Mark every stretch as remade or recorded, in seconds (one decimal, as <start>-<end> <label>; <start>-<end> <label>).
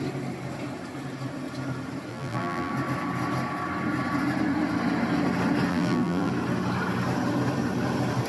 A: 0.0-2.1 recorded; 2.1-2.7 remade; 2.7-5.7 recorded; 5.7-6.3 remade; 6.3-8.3 recorded